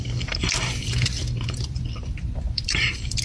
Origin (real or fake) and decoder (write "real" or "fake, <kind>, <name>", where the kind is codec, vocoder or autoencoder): fake, vocoder, BigVGAN v2